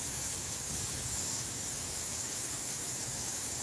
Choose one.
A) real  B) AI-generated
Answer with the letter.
B